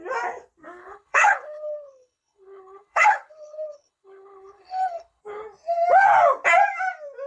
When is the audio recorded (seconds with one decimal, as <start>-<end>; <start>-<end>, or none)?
0.0-0.8; 5.2-7.3